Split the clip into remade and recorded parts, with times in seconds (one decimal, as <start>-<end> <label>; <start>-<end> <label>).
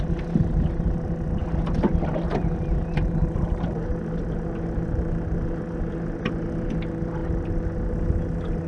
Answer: 0.0-8.7 recorded